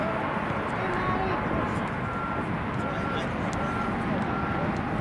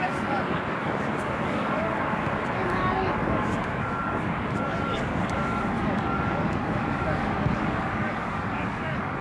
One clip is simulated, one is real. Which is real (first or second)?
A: first